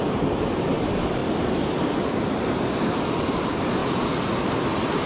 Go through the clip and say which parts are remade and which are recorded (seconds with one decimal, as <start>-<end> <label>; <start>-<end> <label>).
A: 0.0-5.1 recorded